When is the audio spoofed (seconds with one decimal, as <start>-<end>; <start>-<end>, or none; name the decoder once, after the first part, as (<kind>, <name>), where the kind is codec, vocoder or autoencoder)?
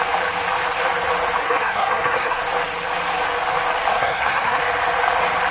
1.4-2.4 (codec, SNAC); 3.9-4.6